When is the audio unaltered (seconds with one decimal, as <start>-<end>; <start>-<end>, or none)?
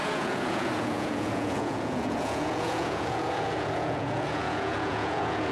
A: none